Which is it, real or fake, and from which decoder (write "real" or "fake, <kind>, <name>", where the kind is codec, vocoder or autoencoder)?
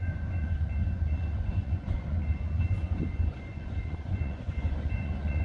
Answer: fake, vocoder, Vocos